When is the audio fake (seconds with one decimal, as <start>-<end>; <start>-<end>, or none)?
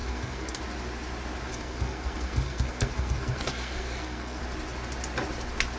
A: 0.0-0.6; 1.5-4.4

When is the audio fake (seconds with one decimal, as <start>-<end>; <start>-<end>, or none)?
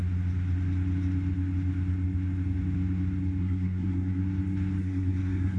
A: 3.4-4.2; 4.8-5.6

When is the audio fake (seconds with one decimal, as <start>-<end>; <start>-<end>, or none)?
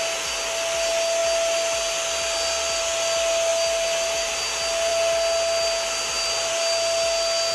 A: none